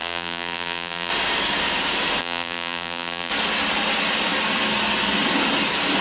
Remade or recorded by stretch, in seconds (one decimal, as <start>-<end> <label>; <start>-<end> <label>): 0.0-1.1 remade; 1.1-2.2 recorded; 2.2-3.3 remade; 3.3-6.0 recorded